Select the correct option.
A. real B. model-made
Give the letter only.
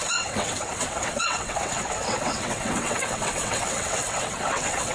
B